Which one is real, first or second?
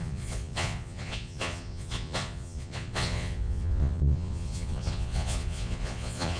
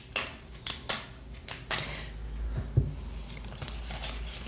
second